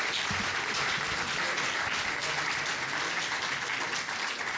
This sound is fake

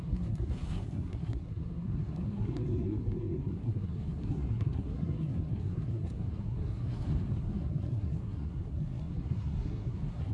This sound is fake